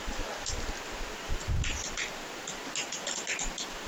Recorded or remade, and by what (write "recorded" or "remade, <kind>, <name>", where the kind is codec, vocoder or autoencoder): recorded